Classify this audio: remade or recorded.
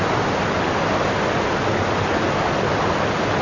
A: recorded